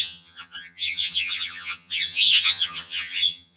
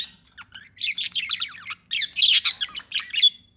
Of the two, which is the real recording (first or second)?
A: second